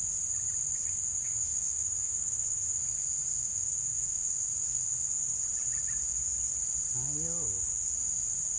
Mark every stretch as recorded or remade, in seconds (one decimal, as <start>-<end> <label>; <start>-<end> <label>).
0.0-1.5 recorded; 1.5-2.8 remade; 2.8-3.3 recorded; 3.3-4.5 remade; 4.5-8.6 recorded